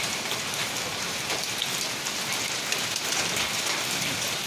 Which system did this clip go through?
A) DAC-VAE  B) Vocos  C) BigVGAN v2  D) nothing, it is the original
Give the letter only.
D